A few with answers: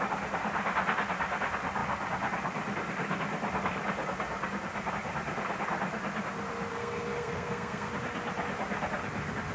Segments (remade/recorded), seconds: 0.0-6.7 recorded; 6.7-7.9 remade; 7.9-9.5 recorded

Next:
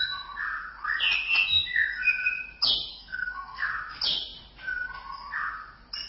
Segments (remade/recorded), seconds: 0.0-2.9 recorded; 2.9-3.7 remade; 3.7-6.1 recorded

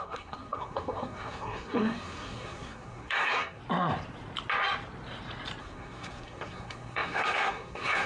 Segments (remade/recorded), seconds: 0.0-3.6 remade; 3.6-5.6 recorded; 5.6-8.1 remade